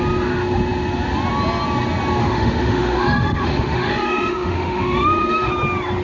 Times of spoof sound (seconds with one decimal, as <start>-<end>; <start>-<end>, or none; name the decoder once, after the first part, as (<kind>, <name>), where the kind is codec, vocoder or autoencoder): 2.2-5.5 (autoencoder, DAC-VAE)